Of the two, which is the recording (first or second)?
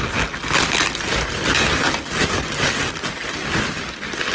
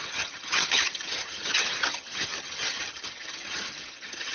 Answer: first